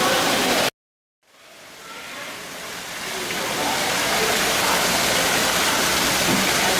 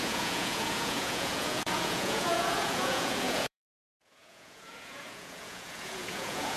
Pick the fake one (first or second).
second